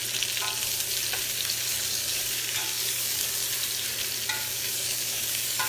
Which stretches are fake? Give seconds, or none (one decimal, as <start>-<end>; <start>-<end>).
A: 1.9-3.4; 4.3-5.7